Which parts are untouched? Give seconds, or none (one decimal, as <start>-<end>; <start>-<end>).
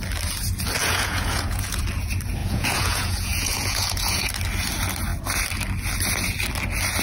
0.0-0.8; 1.8-2.4; 4.3-7.0